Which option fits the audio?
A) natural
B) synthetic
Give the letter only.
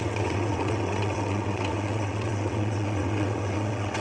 B